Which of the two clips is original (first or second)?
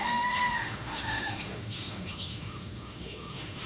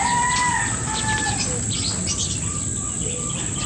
second